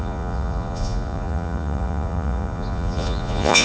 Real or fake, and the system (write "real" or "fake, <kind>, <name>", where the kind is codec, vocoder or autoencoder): fake, vocoder, Vocos